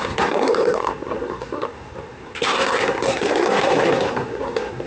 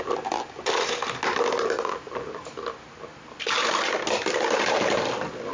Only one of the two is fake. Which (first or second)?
first